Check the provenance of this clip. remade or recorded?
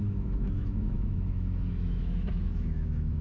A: remade